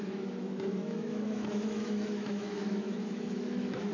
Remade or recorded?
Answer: remade